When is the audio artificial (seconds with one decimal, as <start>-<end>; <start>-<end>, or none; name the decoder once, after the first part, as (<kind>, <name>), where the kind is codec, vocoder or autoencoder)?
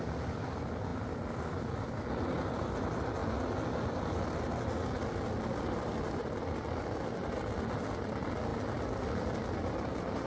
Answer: none